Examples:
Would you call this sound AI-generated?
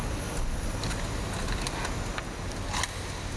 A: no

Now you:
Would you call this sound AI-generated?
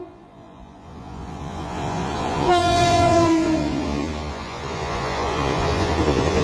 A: yes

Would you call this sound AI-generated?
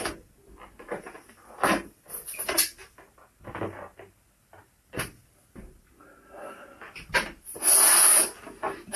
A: no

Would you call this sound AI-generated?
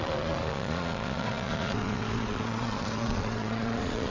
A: yes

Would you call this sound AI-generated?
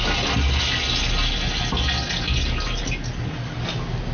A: no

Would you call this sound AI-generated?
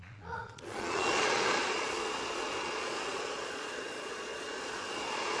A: yes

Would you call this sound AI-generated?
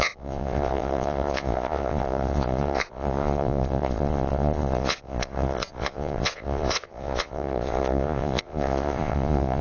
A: yes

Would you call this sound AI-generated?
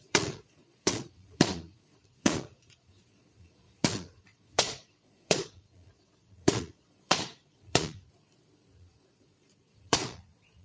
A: yes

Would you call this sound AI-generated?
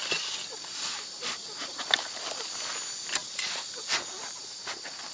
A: no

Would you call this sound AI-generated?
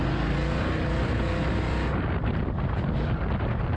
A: no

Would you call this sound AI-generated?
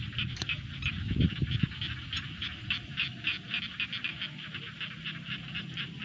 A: no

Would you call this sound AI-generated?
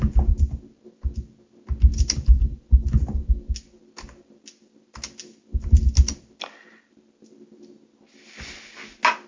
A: no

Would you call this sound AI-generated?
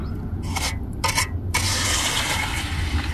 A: no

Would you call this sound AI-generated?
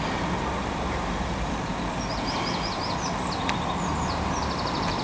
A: no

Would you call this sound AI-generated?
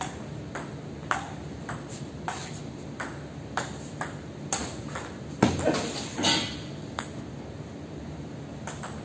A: no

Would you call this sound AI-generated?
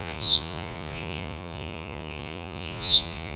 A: yes